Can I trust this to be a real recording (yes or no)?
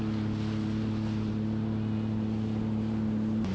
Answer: yes